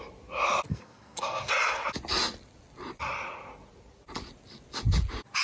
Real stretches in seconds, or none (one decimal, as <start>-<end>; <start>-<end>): 0.0-0.7; 1.5-5.4